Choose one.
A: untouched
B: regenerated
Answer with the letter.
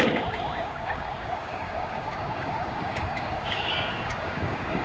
B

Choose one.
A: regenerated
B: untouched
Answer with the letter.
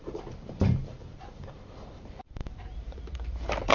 A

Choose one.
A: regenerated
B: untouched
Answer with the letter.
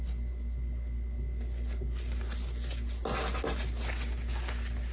B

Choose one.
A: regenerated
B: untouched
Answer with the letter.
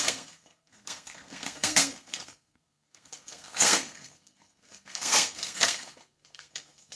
A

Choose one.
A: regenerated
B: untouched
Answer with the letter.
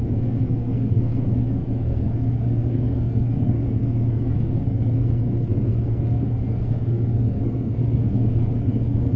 A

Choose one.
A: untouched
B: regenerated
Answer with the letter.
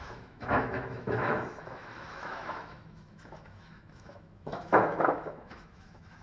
B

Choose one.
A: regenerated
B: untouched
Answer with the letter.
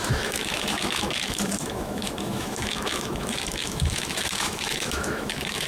A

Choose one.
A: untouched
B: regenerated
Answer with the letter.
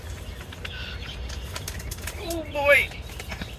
A